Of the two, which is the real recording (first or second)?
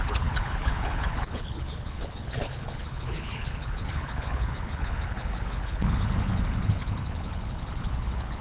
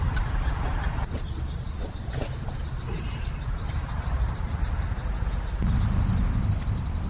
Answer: second